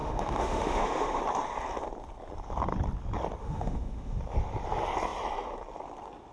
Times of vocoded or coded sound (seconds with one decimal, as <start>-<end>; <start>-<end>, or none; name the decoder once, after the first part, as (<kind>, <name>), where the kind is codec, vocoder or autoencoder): 0.0-1.2 (autoencoder, DAC-VAE); 3.4-4.2